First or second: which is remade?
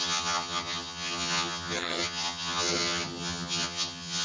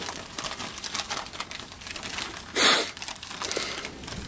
first